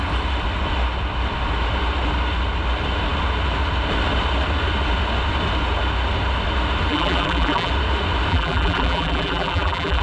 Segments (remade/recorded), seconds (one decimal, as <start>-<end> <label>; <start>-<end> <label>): 0.0-6.9 recorded; 6.9-7.7 remade; 7.7-8.3 recorded; 8.3-10.0 remade